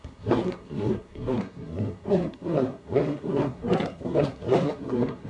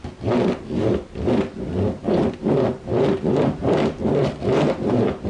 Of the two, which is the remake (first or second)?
first